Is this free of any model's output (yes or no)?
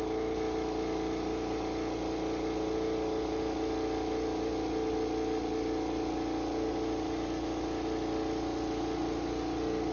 yes